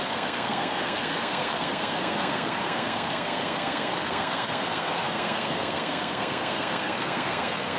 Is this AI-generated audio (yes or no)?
yes